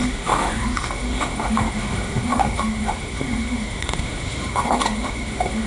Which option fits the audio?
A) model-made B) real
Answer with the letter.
A